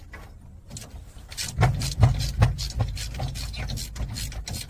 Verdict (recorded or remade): recorded